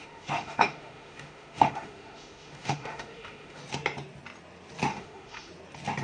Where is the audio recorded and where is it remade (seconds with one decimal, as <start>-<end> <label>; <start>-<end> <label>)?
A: 0.0-3.6 remade; 3.6-4.9 recorded; 4.9-5.5 remade; 5.5-6.0 recorded